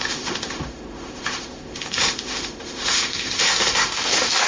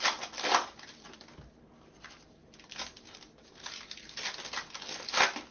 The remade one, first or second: first